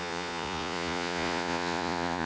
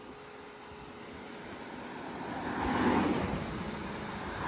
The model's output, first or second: first